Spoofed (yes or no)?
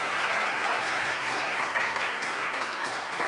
yes